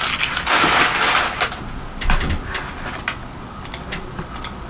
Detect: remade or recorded recorded